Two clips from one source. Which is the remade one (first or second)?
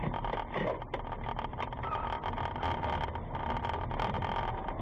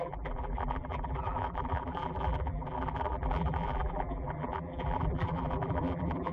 second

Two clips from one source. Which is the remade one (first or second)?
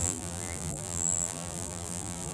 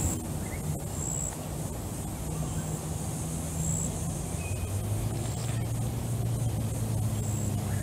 first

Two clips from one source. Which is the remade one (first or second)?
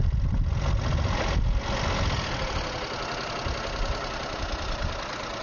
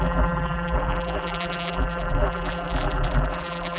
second